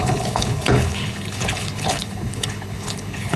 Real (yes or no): no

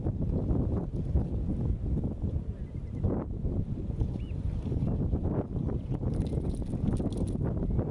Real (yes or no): yes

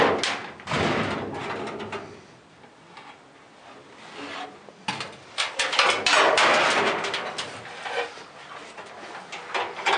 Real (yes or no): yes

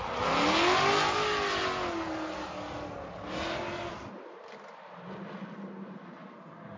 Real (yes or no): yes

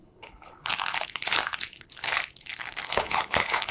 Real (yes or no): no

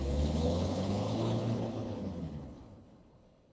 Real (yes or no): no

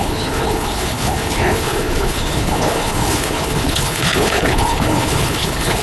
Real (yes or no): no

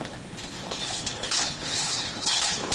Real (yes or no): no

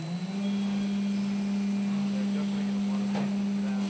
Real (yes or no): yes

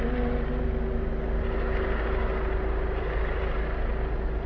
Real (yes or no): yes